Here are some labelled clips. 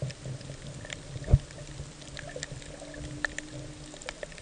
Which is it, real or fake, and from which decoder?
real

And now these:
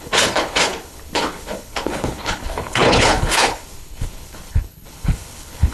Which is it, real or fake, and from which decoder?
fake, codec, HILCodec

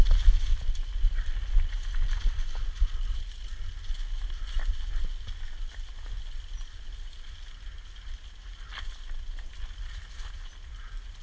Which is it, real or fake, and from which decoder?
real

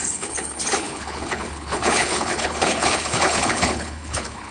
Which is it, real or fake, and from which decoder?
fake, codec, HILCodec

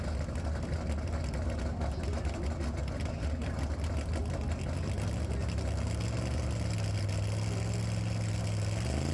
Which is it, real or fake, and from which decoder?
real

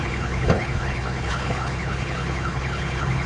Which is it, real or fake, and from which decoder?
fake, codec, HILCodec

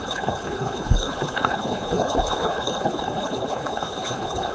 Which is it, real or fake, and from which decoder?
fake, codec, HILCodec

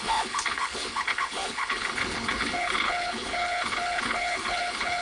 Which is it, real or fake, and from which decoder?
fake, codec, HILCodec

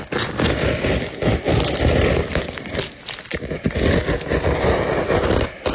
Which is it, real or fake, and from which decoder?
real